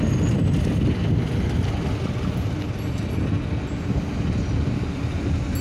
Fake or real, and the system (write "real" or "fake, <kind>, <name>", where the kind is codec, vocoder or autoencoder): real